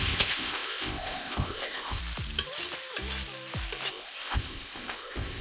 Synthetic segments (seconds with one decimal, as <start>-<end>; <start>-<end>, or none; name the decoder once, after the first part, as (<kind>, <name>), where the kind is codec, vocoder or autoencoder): 0.0-2.0 (codec, ZipCodec); 3.9-5.4

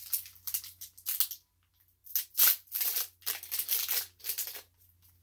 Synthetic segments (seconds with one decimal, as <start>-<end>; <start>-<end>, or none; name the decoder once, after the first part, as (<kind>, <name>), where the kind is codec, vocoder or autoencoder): none